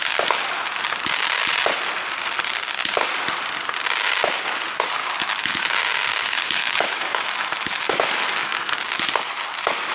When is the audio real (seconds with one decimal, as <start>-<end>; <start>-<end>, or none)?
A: 0.0-5.0; 5.8-6.6; 8.9-9.9